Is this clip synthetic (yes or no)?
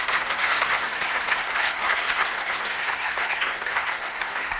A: yes